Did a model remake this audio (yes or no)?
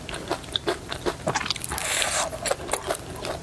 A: yes